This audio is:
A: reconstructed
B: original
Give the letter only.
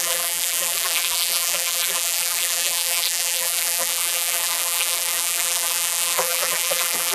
A